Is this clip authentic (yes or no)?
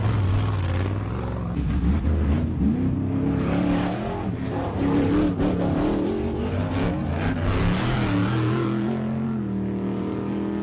yes